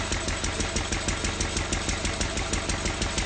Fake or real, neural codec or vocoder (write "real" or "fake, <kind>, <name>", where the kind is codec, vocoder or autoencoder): real